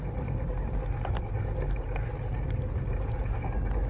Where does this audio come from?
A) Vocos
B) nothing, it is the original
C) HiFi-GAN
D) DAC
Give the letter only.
B